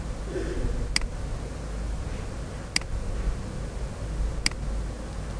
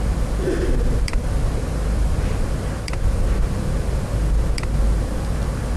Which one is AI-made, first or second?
second